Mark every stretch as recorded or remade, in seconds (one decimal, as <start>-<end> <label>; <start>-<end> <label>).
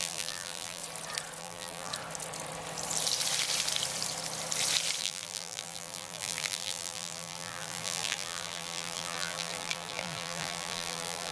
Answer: 0.0-0.8 remade; 0.8-1.4 recorded; 1.4-1.9 remade; 1.9-5.0 recorded; 5.0-11.3 remade